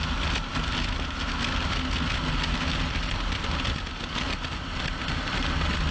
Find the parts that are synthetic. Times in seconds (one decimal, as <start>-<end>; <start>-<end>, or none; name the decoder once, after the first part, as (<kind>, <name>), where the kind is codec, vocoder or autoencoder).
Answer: none